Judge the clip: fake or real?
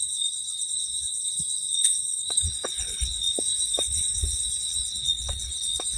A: fake